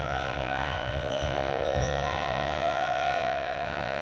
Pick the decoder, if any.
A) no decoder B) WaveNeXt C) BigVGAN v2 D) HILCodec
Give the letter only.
B